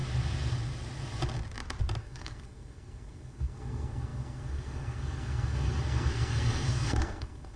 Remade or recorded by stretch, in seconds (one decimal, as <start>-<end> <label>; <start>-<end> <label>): 0.0-2.0 recorded; 2.0-7.6 remade